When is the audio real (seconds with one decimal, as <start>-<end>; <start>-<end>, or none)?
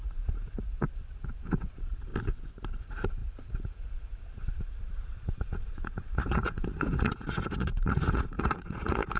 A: 2.1-2.8